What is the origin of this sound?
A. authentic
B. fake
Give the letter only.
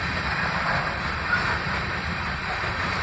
B